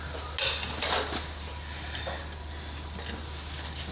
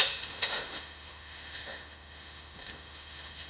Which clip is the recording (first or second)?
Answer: first